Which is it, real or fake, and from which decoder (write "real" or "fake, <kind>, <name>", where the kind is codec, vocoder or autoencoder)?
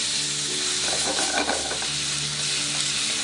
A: real